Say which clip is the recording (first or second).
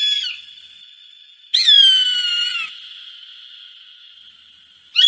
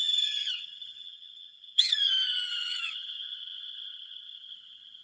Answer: first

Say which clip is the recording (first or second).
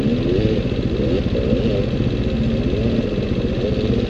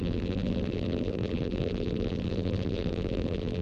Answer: first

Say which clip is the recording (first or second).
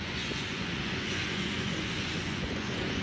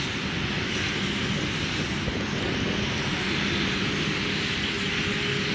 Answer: second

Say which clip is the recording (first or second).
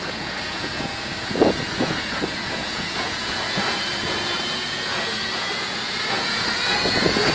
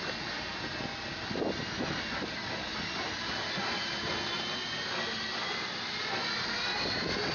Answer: second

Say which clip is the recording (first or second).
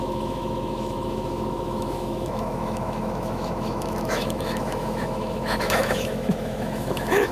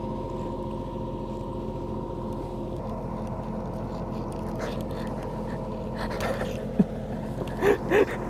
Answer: second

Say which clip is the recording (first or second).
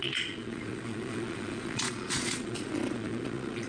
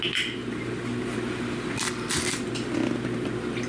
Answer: second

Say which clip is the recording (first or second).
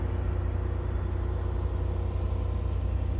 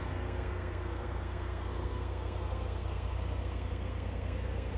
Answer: first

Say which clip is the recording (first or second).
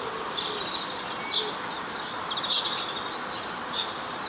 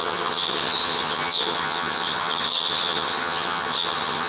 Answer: first